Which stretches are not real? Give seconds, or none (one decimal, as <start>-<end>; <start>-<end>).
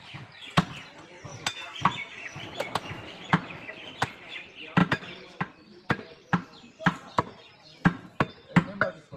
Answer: 1.3-3.9; 4.8-8.3